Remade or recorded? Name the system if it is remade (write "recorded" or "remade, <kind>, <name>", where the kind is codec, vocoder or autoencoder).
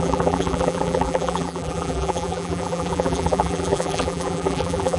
remade, vocoder, BigVGAN v2